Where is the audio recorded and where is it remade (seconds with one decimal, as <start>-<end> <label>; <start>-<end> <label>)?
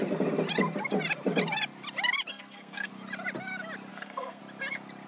0.0-2.3 recorded; 2.3-2.9 remade; 2.9-3.9 recorded; 3.9-4.4 remade; 4.4-5.1 recorded